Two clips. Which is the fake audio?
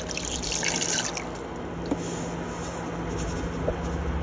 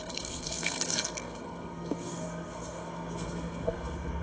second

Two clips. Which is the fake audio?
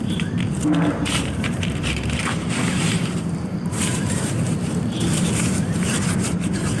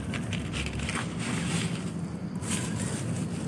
first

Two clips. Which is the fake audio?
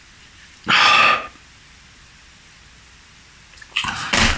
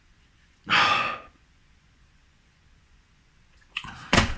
second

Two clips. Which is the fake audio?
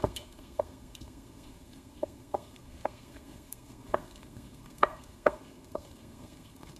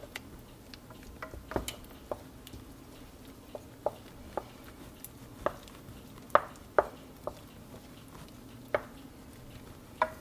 first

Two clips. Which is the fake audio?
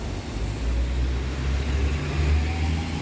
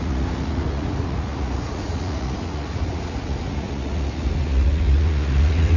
second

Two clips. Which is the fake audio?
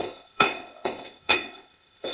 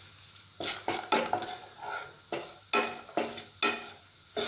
first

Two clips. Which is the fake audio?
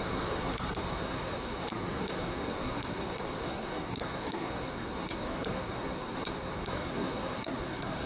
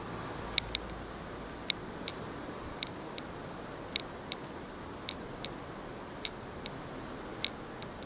first